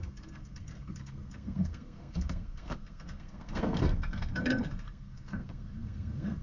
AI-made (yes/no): yes